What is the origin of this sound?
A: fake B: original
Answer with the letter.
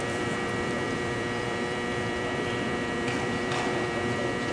A